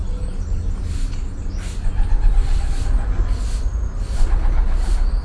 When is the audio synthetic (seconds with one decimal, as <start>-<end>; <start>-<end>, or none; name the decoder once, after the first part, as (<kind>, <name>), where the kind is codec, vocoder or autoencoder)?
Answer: none